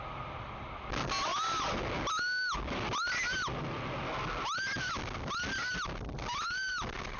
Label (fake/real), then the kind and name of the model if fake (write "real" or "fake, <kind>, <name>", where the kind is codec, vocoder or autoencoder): real